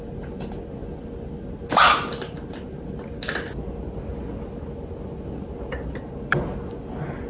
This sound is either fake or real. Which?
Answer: real